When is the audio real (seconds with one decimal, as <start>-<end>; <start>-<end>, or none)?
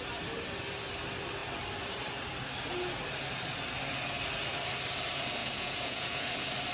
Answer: 0.0-5.4; 6.3-6.7